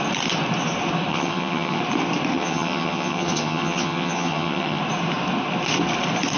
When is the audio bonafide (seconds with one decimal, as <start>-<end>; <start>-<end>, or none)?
0.0-1.1; 1.8-2.3; 4.8-6.4